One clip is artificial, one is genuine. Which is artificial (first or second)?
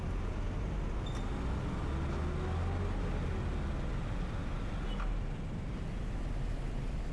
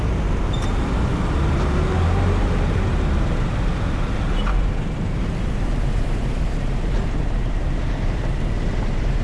second